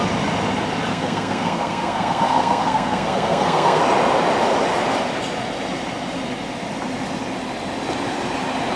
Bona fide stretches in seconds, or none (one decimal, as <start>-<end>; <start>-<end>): 0.0-0.9; 3.8-8.8